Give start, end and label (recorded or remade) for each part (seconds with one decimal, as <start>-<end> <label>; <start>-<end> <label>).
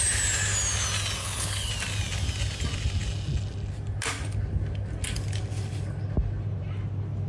0.0-1.2 recorded; 1.2-1.7 remade; 1.7-7.3 recorded